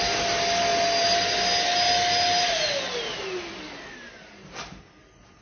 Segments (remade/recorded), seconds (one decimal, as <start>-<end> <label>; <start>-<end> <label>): 0.0-5.4 recorded